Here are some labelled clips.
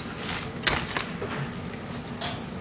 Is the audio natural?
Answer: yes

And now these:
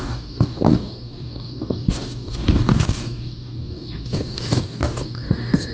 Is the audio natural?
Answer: no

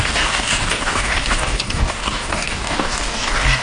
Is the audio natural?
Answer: no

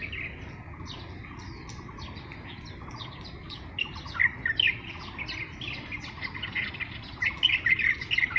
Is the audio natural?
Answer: yes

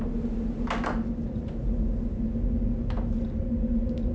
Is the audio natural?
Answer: yes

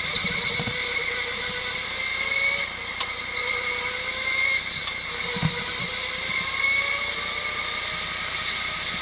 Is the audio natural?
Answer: yes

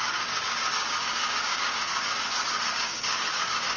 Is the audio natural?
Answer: no